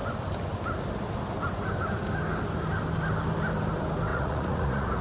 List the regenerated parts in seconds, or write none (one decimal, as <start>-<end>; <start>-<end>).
4.1-5.0